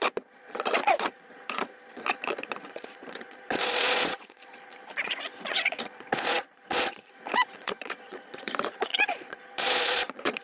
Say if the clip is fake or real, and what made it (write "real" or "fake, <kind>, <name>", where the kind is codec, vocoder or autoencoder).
fake, vocoder, Vocos